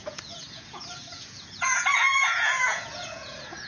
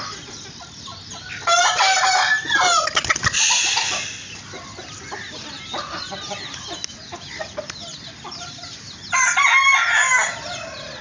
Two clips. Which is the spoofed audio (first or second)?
first